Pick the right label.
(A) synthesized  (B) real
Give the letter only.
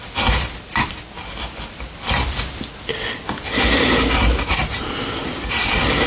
B